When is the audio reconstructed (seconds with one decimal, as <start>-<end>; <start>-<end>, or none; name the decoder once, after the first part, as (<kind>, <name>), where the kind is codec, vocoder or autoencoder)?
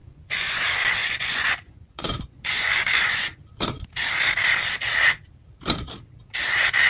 0.0-0.6 (vocoder, Vocos); 1.0-3.5